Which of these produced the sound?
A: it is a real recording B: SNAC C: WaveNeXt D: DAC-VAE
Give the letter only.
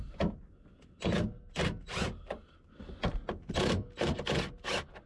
A